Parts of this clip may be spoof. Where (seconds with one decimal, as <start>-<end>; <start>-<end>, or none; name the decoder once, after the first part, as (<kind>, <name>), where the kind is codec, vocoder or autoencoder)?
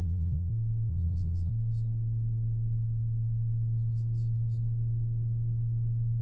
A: 0.0-0.5 (vocoder, Vocos); 0.9-1.5